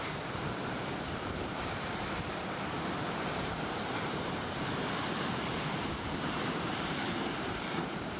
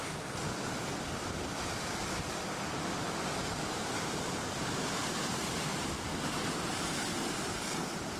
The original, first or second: second